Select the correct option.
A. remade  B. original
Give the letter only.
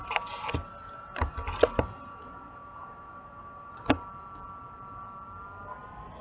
B